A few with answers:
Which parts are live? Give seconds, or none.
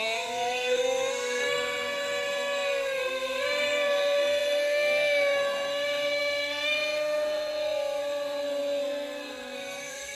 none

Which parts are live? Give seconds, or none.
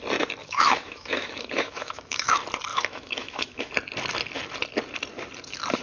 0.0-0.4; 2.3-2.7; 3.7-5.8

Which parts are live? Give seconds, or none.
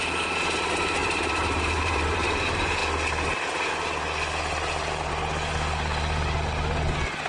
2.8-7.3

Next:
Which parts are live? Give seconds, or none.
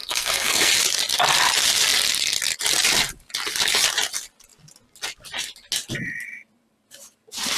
0.7-7.6